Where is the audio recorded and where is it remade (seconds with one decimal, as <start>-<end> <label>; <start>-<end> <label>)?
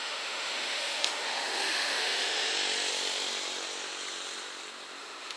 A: 0.0-2.5 remade; 2.5-5.0 recorded; 5.0-5.4 remade